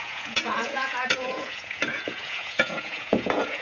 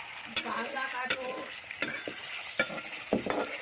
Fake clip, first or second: first